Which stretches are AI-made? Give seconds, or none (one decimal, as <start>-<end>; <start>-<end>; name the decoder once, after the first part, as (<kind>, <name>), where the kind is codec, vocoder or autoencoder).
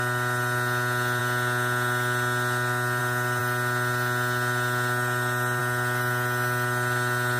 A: none